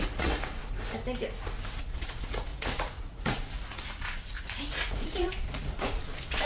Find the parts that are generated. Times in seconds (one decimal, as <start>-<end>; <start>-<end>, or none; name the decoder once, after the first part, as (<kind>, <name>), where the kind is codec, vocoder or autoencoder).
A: 0.0-0.6 (vocoder, Vocos); 1.8-6.5